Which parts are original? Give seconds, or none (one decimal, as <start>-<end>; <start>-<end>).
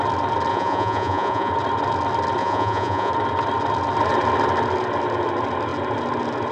0.0-0.5; 1.5-2.4; 3.1-6.5